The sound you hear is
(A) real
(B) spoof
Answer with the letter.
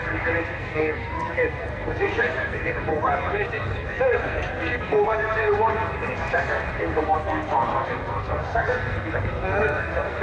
B